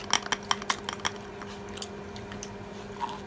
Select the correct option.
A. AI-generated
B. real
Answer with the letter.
B